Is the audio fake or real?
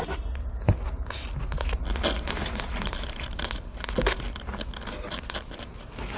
real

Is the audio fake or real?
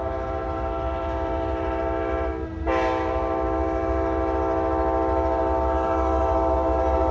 real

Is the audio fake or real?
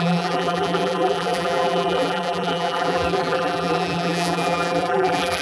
fake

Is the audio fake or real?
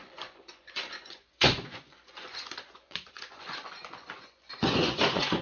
fake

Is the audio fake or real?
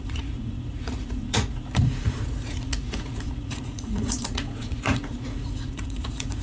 fake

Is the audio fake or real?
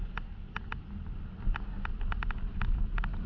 real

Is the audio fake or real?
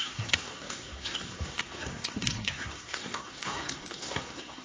fake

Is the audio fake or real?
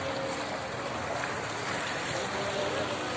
real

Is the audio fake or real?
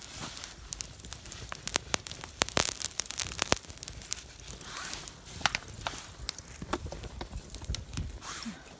real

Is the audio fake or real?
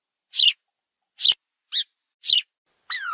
real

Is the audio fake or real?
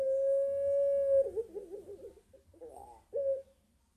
real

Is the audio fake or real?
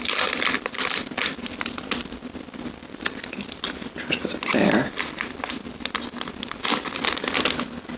fake